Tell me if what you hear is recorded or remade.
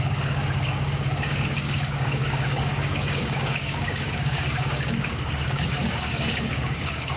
remade